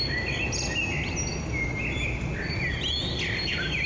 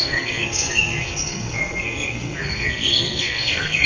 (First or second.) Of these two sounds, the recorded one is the first